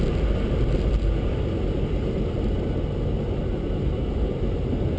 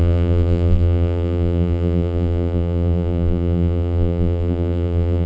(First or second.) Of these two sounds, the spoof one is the second